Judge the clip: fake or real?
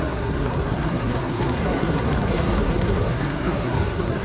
fake